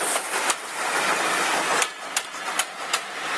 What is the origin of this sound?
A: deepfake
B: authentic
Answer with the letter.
B